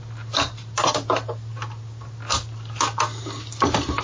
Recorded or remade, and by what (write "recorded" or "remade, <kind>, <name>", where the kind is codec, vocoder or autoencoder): recorded